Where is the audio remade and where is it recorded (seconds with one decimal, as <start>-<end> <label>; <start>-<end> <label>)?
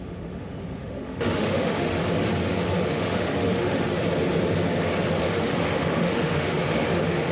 0.0-2.0 remade; 2.0-2.9 recorded; 2.9-3.9 remade; 3.9-5.1 recorded; 5.1-7.3 remade